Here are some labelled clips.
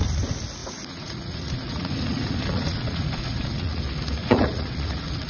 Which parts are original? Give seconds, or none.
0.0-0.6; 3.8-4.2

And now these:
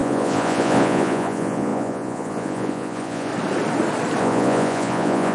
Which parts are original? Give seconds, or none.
3.3-4.2

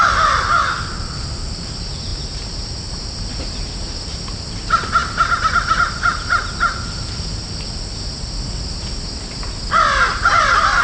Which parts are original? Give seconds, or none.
0.0-10.8

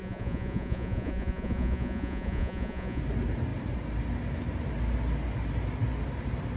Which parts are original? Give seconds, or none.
3.0-6.6

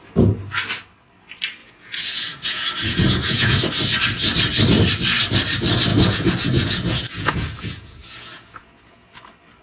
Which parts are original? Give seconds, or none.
0.0-1.6; 3.6-5.9; 9.2-9.6

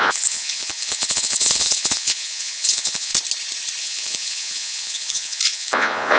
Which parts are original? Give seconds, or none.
3.1-3.8

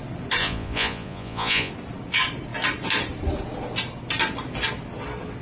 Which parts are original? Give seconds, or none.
0.0-0.4; 1.7-5.4